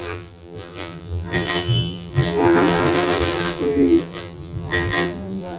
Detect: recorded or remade remade